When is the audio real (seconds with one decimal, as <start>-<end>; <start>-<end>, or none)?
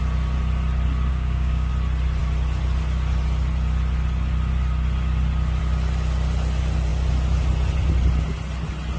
0.0-1.1; 1.7-9.0